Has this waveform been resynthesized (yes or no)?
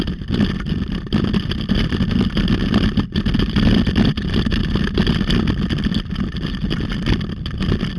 no